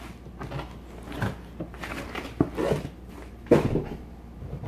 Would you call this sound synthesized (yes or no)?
no